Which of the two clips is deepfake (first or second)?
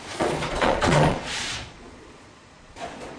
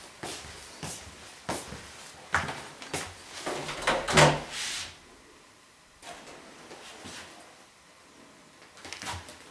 first